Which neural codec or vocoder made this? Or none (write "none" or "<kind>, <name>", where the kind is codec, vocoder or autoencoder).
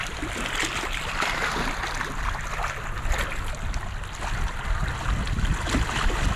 none